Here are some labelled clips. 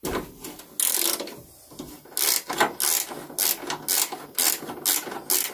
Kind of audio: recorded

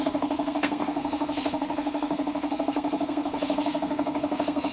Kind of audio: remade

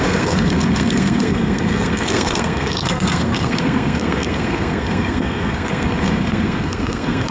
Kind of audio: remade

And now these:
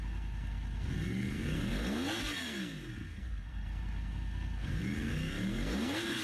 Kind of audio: remade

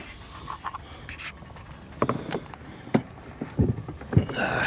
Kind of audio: recorded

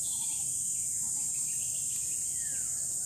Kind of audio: recorded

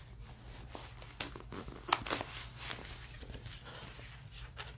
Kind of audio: recorded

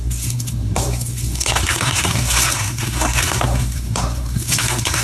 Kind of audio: remade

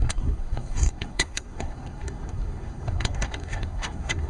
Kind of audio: remade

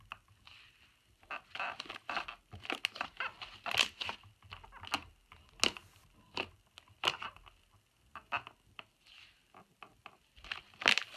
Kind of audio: recorded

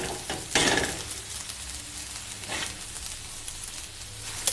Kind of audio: recorded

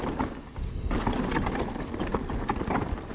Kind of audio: recorded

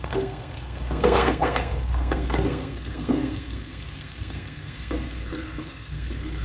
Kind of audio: remade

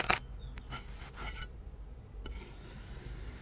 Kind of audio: recorded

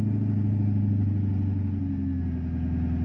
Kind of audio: recorded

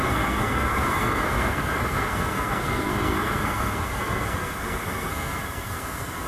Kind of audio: remade